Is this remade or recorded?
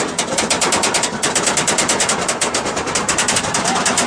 recorded